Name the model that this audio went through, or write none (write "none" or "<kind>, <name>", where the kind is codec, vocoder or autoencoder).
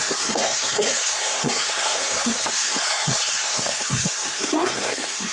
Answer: codec, SNAC